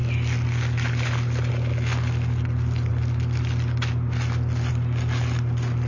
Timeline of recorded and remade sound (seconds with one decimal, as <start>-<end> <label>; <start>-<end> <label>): 0.0-5.9 recorded